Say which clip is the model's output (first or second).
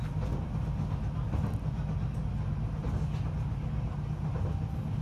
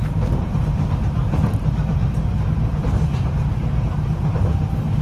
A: second